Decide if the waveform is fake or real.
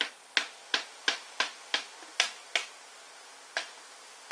real